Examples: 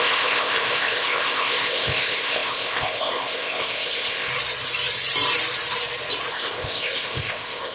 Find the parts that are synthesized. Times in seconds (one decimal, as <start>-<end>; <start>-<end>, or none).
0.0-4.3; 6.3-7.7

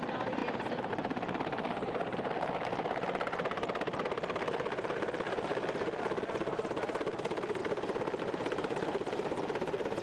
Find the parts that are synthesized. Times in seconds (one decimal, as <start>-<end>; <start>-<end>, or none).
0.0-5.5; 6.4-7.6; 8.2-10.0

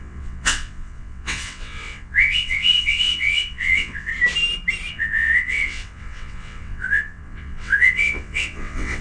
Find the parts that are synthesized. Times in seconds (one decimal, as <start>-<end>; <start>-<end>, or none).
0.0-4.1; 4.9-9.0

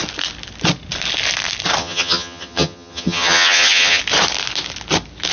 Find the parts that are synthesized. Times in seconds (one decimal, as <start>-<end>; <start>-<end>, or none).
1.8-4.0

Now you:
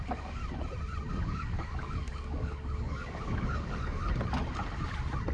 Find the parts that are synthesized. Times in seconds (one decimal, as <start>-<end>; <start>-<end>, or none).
0.0-0.4; 1.1-4.0

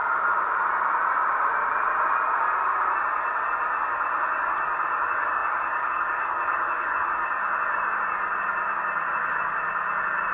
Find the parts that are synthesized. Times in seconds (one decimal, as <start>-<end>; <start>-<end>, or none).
none

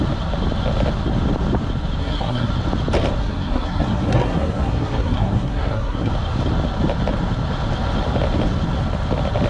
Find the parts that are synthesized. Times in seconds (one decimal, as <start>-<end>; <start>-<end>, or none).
2.0-2.5; 3.2-6.1

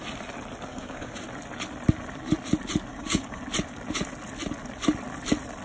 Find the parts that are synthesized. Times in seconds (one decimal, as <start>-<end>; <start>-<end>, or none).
0.7-1.2; 2.9-3.4